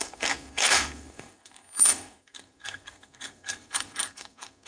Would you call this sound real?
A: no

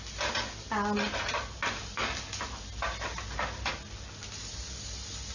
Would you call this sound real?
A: yes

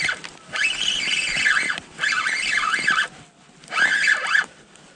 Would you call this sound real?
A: yes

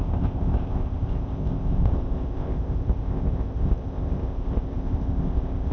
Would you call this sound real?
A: no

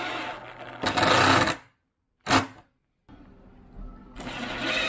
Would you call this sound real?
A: yes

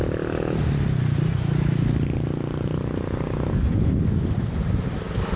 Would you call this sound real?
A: yes